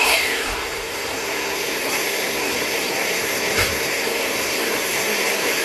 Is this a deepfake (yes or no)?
yes